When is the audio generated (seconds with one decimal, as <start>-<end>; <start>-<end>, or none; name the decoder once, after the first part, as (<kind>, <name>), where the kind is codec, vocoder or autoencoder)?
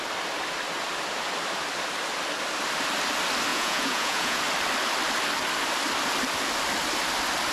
3.5-4.4 (vocoder, Vocos)